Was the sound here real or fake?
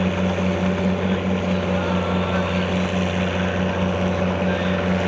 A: real